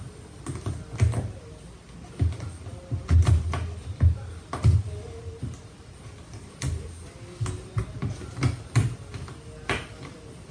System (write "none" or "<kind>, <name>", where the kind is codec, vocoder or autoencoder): none